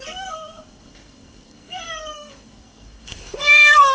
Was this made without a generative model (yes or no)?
no